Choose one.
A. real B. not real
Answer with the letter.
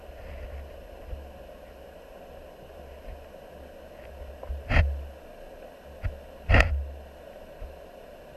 A